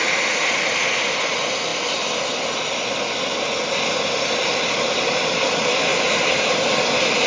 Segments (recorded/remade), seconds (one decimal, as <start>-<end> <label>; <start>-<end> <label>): 0.0-7.3 recorded